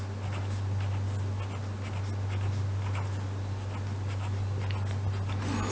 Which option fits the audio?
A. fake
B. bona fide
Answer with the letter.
B